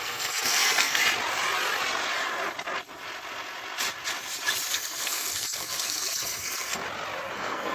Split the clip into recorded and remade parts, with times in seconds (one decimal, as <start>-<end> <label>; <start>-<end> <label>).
0.0-1.0 remade; 1.0-4.7 recorded; 4.7-6.8 remade; 6.8-7.3 recorded; 7.3-7.7 remade